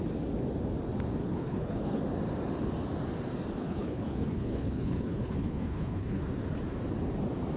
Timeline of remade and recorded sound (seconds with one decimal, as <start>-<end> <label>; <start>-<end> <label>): 0.0-1.2 recorded; 1.2-2.0 remade; 2.0-3.6 recorded; 3.6-6.2 remade; 6.2-7.6 recorded